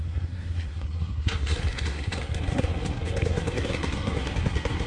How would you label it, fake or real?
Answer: fake